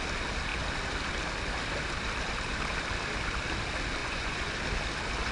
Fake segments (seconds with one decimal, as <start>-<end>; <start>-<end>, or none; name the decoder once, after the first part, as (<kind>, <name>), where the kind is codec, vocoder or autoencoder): 4.0-4.5 (vocoder, Vocos)